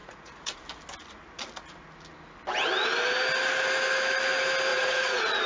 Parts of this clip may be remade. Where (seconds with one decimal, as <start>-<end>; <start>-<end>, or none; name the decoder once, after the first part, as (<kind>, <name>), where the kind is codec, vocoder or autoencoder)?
0.0-0.6 (vocoder, Vocos); 4.7-5.5

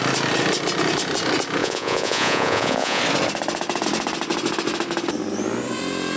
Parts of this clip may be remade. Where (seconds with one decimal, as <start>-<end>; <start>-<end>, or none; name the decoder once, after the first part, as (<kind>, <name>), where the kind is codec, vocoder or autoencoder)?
1.6-3.0 (vocoder, Vocos)

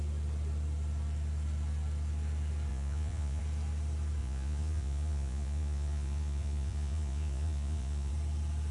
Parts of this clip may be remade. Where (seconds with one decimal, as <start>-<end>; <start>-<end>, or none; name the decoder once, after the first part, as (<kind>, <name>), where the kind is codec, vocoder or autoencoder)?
2.7-3.4 (vocoder, Vocos); 4.2-8.1

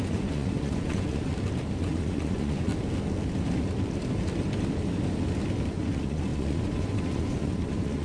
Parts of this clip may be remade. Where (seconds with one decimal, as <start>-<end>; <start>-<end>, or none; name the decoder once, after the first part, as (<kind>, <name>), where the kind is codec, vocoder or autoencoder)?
0.0-1.3 (vocoder, Vocos); 1.8-2.7; 5.7-8.0

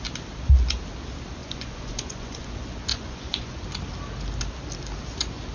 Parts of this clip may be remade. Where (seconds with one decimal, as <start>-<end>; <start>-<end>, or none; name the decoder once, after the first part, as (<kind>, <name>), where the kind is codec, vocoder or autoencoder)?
1.4-2.5 (vocoder, Vocos); 2.9-3.6

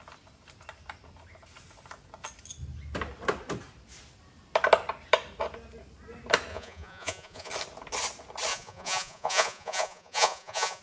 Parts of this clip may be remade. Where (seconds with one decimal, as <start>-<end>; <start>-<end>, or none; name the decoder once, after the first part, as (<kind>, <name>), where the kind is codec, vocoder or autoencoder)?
6.5-7.5 (vocoder, Vocos); 8.5-10.8

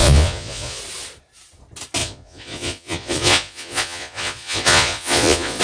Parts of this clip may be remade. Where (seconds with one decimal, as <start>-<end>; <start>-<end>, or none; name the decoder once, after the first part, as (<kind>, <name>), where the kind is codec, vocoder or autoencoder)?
0.0-0.8 (vocoder, Vocos); 2.0-5.6

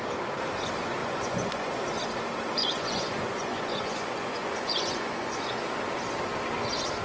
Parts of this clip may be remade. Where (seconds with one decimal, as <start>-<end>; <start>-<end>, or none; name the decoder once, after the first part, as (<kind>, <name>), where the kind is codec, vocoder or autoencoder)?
1.0-1.8 (vocoder, Vocos); 2.6-5.5